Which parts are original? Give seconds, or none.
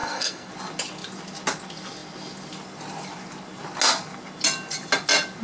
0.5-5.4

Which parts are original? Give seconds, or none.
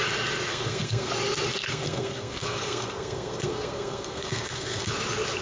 0.0-0.5; 1.1-1.7; 4.9-5.4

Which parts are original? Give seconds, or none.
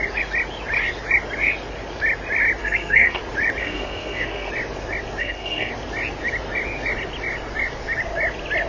0.0-2.6; 3.2-3.6; 4.5-5.2; 5.7-8.7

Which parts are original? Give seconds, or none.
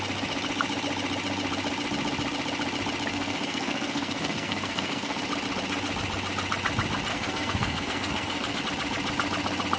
0.0-3.1; 5.2-7.1; 8.6-9.8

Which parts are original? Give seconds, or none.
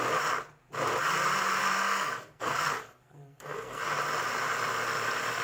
0.0-1.6; 3.8-5.4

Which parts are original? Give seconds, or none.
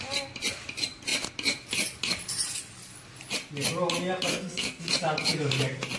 0.0-4.3; 4.9-6.0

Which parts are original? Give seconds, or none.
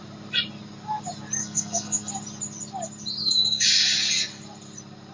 0.0-1.4; 2.1-3.2; 3.7-5.1